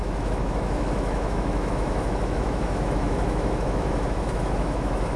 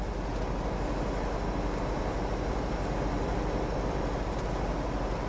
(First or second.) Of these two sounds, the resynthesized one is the first